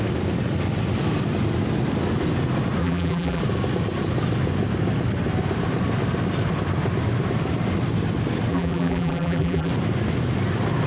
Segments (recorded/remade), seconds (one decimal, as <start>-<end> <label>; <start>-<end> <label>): 0.0-2.8 recorded; 2.8-3.4 remade; 3.4-8.5 recorded; 8.5-9.7 remade; 9.7-10.9 recorded